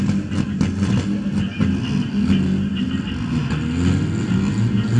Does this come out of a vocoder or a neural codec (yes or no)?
no